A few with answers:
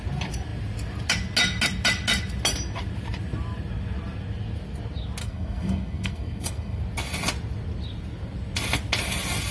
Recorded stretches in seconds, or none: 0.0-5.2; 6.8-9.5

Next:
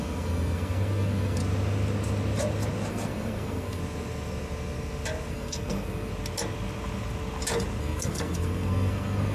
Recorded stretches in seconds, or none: 1.4-2.9; 3.8-5.3; 6.1-7.8

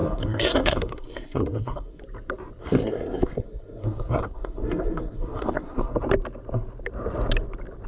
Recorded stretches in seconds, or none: 2.0-2.6; 5.9-7.9